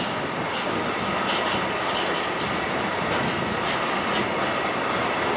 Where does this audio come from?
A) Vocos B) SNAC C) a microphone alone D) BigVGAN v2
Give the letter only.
C